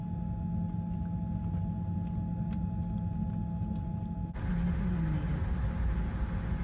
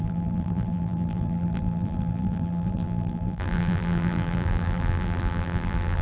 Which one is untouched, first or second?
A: first